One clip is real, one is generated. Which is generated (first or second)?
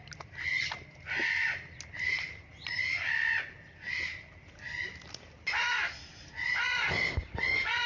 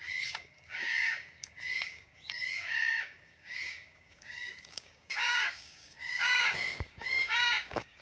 second